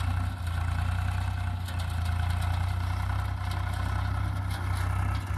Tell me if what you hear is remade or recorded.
recorded